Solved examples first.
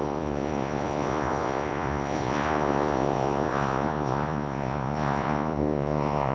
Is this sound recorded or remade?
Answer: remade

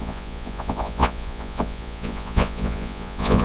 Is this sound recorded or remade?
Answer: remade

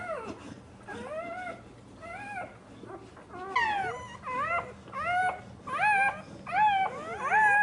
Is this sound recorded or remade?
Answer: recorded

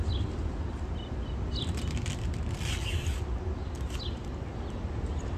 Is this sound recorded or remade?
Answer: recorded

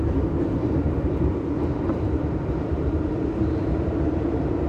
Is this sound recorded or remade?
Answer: remade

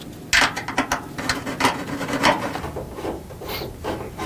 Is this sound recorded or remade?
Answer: recorded